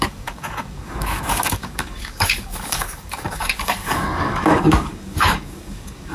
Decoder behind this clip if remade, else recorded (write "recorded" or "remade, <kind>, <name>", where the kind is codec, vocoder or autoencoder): remade, codec, DAC